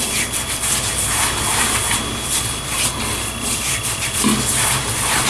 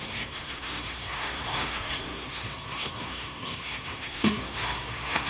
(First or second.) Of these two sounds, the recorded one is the first